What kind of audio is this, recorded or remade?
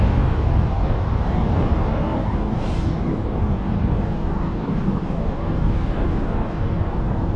remade